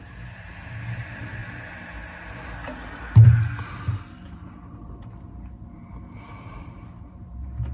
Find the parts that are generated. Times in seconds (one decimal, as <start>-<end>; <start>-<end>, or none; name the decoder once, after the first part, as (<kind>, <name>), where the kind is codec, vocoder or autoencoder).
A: 0.0-1.4 (vocoder, BigVGAN v2); 3.6-7.7